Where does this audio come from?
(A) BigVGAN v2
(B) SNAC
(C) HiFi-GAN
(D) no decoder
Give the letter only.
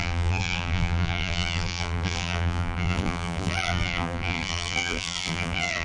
A